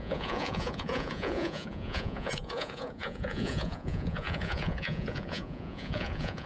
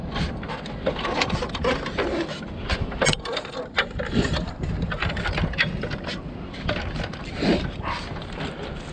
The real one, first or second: second